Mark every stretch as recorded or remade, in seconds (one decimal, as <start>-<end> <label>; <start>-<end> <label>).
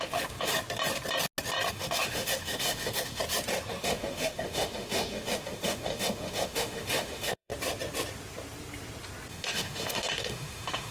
0.0-0.5 remade; 0.5-1.7 recorded; 1.7-3.2 remade; 3.2-3.8 recorded; 3.8-7.5 remade; 7.5-9.3 recorded; 9.3-10.9 remade